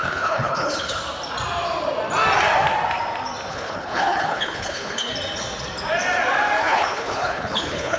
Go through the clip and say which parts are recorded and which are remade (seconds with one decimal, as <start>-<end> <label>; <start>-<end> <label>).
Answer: 0.0-1.0 remade; 1.0-3.5 recorded; 3.5-5.1 remade; 5.1-6.6 recorded; 6.6-8.0 remade